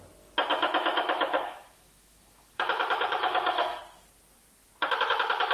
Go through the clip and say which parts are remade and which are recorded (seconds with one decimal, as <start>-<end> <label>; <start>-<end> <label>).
0.0-0.5 recorded; 0.5-3.8 remade; 3.8-5.5 recorded